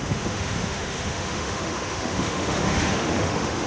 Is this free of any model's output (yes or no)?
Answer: no